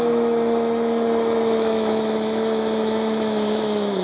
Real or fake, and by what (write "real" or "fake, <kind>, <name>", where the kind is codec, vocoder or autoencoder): fake, autoencoder, DAC-VAE